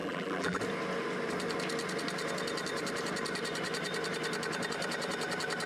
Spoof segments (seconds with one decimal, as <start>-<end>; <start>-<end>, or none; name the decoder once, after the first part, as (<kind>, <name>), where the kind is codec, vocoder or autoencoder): 0.0-0.6 (vocoder, BigVGAN v2)